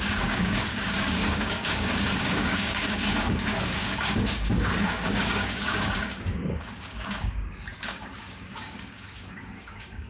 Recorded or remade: remade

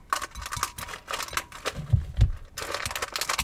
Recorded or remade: recorded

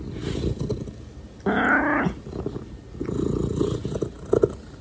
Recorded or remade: recorded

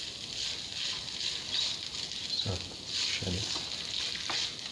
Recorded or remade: recorded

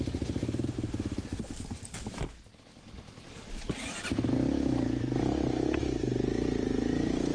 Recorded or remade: recorded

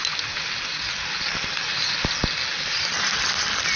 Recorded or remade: recorded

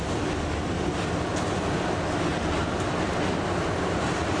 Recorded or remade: recorded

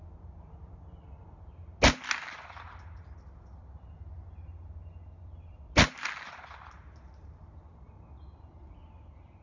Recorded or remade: recorded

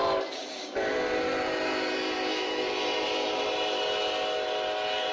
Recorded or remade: recorded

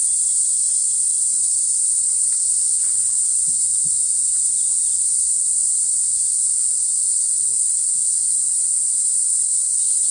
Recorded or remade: recorded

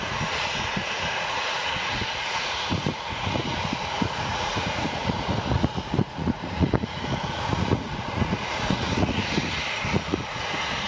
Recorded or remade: remade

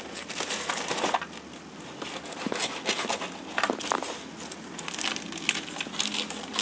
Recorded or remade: recorded